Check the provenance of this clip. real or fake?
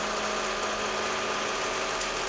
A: real